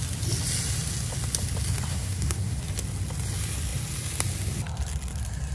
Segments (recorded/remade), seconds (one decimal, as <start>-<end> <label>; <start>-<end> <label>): 0.0-1.9 recorded; 1.9-2.6 remade; 2.6-5.5 recorded